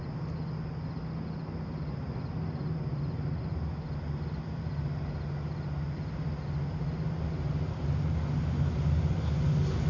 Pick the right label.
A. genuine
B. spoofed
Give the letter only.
A